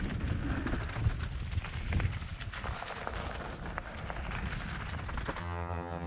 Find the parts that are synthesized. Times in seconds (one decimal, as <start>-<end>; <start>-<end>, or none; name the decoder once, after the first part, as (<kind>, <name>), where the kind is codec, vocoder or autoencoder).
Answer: 5.4-6.1 (vocoder, HiFi-GAN)